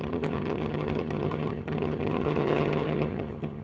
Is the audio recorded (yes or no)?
no